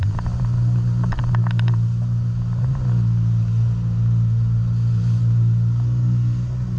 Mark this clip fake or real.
real